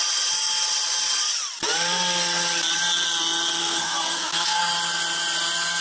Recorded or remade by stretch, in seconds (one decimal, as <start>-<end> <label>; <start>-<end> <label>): 0.0-3.6 recorded; 3.6-4.6 remade; 4.6-5.8 recorded

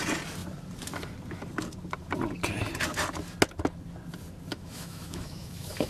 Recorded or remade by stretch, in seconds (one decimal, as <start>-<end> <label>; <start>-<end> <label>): 0.0-4.5 recorded; 4.5-5.9 remade

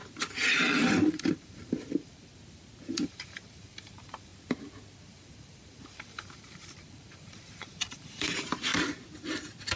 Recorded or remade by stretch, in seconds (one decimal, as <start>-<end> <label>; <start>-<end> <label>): 0.0-1.1 recorded; 1.1-2.3 remade; 2.3-3.1 recorded; 3.1-4.3 remade; 4.3-5.0 recorded; 5.0-8.7 remade; 8.7-9.8 recorded

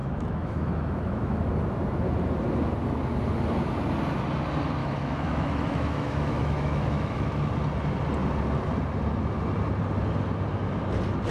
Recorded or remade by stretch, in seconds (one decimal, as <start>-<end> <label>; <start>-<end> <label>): 0.0-1.5 remade; 1.5-4.8 recorded; 4.8-7.5 remade; 7.5-11.3 recorded

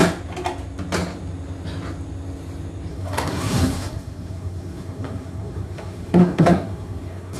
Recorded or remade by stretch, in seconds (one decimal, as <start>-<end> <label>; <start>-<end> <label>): 0.0-2.9 recorded; 2.9-7.4 remade

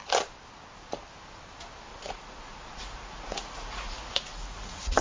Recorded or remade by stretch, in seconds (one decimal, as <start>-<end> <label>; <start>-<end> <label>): 0.0-1.9 recorded; 1.9-5.0 remade